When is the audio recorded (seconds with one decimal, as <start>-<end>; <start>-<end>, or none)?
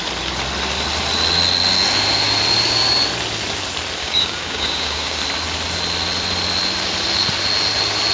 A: 0.0-4.0; 5.2-8.1